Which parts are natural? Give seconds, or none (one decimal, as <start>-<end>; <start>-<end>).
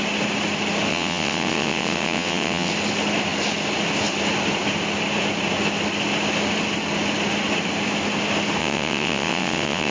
0.0-0.9; 2.7-8.6